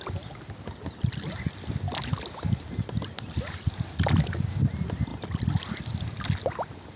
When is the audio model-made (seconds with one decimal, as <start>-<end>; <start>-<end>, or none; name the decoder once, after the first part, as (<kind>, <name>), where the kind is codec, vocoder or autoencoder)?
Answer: none